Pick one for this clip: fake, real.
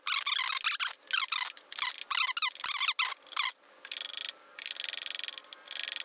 real